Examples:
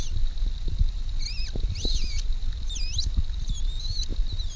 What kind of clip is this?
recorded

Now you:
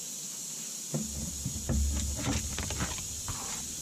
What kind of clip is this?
recorded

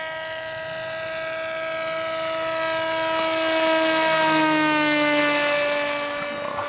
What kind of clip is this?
recorded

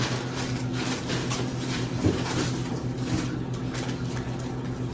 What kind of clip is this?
recorded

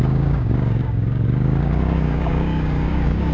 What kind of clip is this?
remade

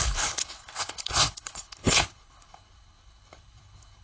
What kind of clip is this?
remade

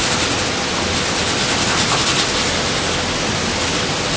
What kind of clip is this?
recorded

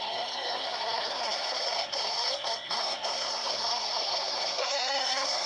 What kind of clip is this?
remade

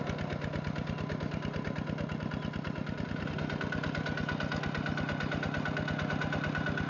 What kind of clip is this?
recorded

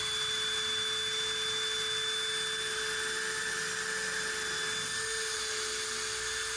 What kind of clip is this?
recorded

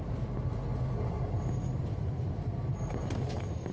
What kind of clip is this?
recorded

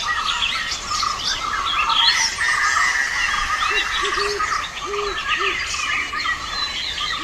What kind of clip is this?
recorded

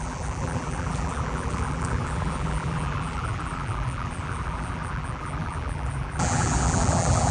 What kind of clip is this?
remade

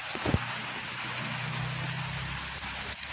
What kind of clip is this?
recorded